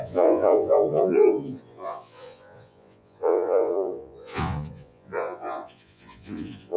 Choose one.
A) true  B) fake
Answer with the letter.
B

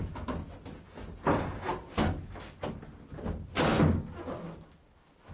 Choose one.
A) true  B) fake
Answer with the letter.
A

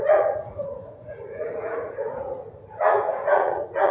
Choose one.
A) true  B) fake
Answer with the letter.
B